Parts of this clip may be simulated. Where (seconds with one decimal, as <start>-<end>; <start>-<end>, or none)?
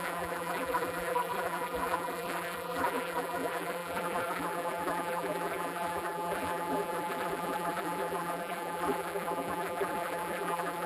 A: 0.0-10.9